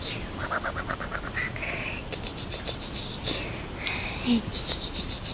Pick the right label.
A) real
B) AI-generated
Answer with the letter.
A